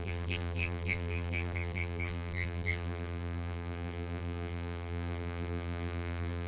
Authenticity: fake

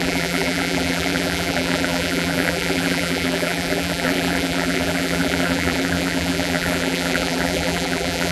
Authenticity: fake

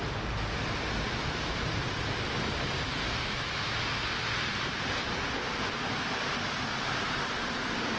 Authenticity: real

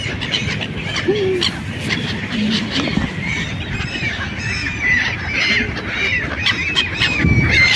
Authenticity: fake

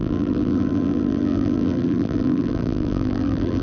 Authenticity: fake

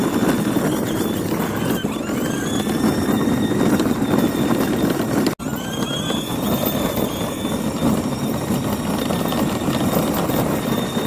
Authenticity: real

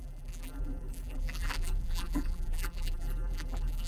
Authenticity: fake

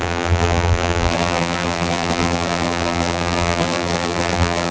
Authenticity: fake